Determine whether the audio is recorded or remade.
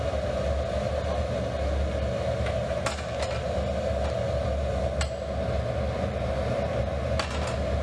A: recorded